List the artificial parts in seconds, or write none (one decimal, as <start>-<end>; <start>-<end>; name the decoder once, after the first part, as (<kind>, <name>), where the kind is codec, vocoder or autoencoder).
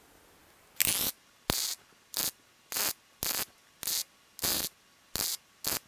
none